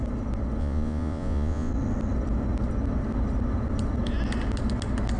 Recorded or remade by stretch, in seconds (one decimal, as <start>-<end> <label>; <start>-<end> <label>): 0.0-0.6 recorded; 0.6-1.7 remade; 1.7-5.2 recorded